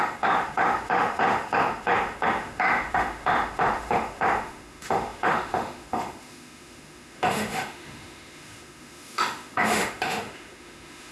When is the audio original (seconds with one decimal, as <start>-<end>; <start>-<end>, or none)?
none